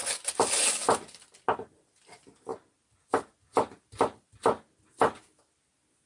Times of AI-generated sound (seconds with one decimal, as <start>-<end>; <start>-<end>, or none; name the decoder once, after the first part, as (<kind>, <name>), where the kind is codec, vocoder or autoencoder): none